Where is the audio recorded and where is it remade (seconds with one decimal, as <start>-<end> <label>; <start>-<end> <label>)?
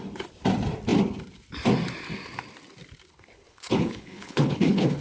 0.0-3.1 recorded; 3.1-5.0 remade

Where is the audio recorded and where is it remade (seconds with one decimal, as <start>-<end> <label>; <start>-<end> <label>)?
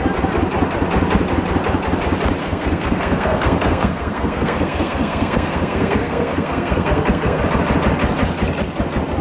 0.0-2.4 recorded; 2.4-7.4 remade; 7.4-9.2 recorded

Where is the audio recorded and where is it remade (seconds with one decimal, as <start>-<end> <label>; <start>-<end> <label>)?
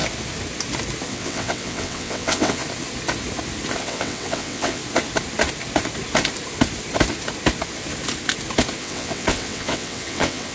0.0-1.1 recorded; 1.1-2.6 remade; 2.6-3.8 recorded; 3.8-4.8 remade; 4.8-8.8 recorded; 8.8-10.5 remade